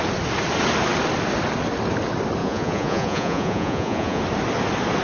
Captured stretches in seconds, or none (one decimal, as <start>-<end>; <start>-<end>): 0.0-2.4; 4.2-5.0